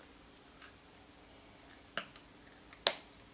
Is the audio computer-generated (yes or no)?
no